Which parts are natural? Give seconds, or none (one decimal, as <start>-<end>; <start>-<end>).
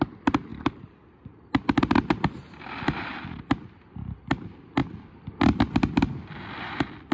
0.0-7.1